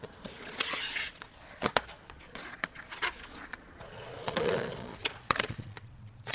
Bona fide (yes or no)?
no